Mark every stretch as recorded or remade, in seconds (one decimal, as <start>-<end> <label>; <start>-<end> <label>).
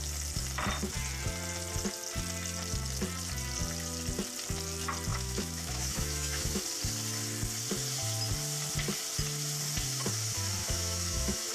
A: 0.0-5.1 recorded; 5.1-6.6 remade; 6.6-10.6 recorded; 10.6-11.5 remade